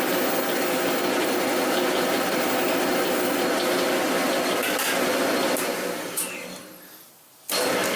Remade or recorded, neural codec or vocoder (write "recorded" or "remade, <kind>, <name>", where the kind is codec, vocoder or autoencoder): recorded